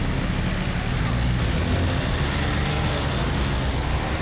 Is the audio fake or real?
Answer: real